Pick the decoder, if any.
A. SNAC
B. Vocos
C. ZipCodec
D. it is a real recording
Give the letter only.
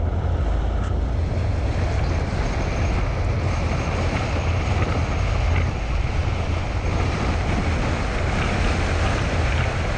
D